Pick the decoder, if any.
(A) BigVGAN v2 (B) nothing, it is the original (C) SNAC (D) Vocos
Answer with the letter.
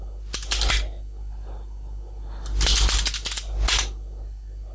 B